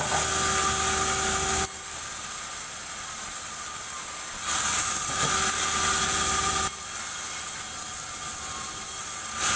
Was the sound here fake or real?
real